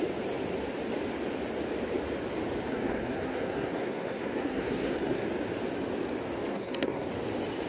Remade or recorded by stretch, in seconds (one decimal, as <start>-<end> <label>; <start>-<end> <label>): 0.0-2.7 recorded; 2.7-5.3 remade; 5.3-6.5 recorded; 6.5-7.1 remade; 7.1-7.7 recorded